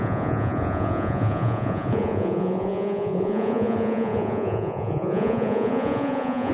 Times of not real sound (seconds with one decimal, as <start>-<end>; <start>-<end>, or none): 0.0-6.5